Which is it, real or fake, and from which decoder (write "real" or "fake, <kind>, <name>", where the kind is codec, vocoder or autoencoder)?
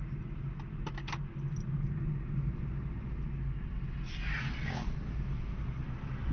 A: real